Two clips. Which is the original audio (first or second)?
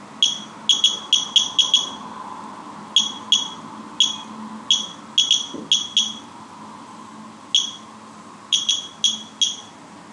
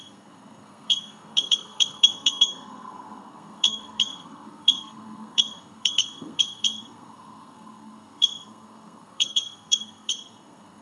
first